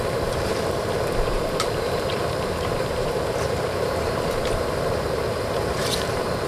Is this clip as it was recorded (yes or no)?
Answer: no